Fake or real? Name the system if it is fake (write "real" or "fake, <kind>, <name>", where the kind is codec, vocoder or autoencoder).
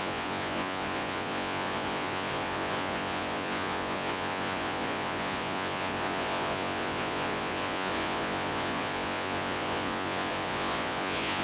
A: fake, vocoder, Vocos